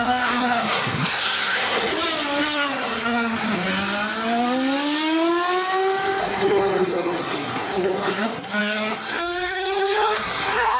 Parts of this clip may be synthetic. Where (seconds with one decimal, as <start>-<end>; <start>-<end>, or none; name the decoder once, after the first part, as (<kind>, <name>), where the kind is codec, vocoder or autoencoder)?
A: 0.0-1.9 (codec, SNAC); 2.4-3.7; 6.2-10.8